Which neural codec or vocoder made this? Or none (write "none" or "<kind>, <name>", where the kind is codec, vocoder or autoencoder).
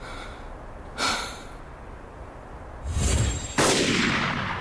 none